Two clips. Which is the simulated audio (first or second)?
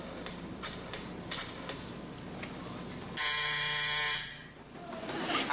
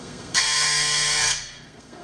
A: second